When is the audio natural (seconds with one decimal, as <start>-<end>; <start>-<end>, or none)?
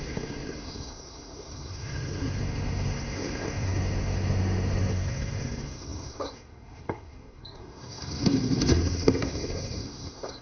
none